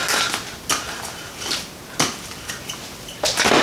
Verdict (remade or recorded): recorded